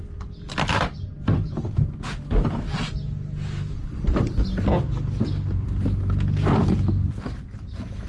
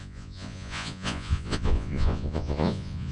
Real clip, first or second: first